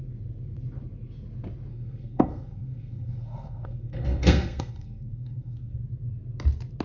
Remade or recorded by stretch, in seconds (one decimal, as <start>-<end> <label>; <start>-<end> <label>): 0.0-1.7 recorded; 1.7-5.8 remade; 5.8-6.8 recorded